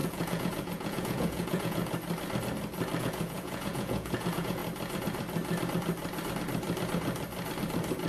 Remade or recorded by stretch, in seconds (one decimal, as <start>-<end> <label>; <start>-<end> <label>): 0.0-1.8 remade; 1.8-3.0 recorded; 3.0-4.6 remade; 4.6-8.1 recorded